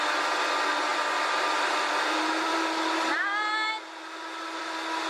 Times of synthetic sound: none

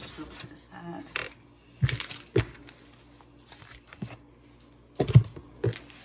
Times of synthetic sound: none

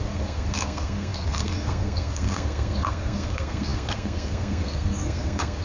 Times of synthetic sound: 0.0-5.6

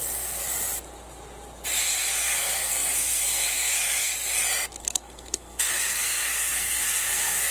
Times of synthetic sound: 0.0-0.4; 1.8-4.1; 4.8-7.5

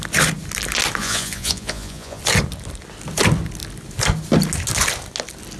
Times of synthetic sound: 1.0-2.2

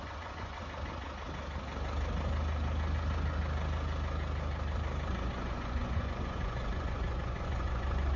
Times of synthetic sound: 0.0-0.6; 5.1-8.2